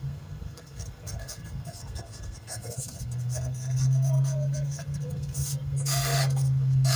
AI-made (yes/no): yes